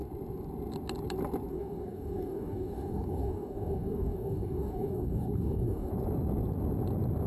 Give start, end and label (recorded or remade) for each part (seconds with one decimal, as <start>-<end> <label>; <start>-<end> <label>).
0.0-1.5 recorded; 1.5-5.9 remade; 5.9-7.3 recorded